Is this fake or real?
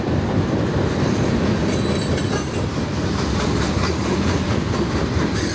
fake